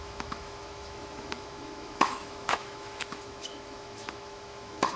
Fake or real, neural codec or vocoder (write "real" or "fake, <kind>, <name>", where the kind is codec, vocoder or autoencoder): fake, autoencoder, DAC-VAE